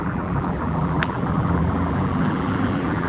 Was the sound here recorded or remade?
remade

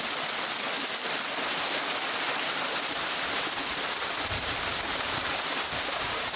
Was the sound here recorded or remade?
recorded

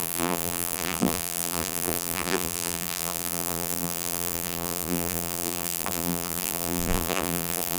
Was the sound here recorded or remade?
remade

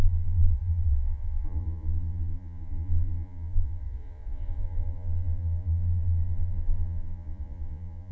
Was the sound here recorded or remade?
remade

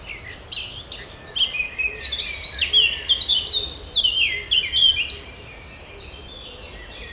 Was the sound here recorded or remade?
recorded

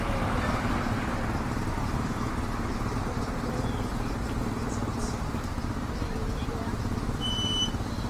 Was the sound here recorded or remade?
remade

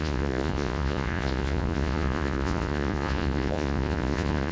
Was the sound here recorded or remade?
remade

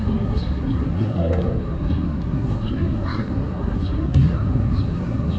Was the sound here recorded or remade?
remade